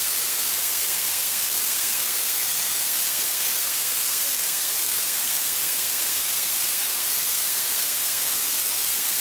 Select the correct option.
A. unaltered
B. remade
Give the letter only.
B